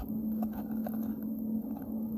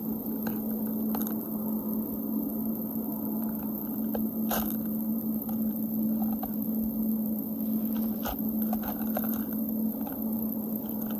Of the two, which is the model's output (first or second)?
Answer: first